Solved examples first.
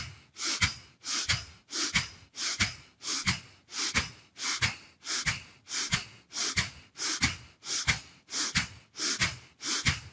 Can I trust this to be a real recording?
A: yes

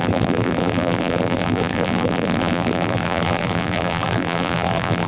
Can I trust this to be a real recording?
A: no